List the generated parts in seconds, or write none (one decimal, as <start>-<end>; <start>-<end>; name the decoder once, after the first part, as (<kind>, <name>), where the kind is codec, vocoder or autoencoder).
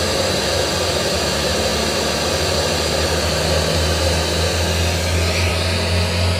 none